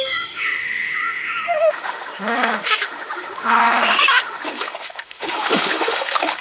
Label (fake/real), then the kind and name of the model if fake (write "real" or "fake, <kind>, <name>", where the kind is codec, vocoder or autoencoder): fake, autoencoder, DAC-VAE